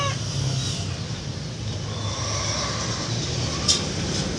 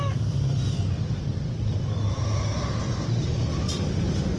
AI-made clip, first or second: second